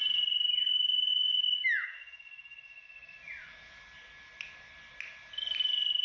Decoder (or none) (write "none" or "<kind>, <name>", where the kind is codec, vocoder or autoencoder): none